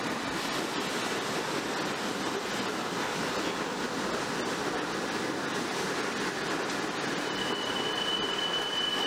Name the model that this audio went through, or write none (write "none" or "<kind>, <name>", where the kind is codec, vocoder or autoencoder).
none